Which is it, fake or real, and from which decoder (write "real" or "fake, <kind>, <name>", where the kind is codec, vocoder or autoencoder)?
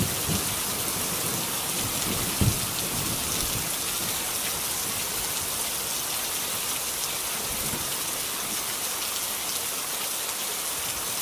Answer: real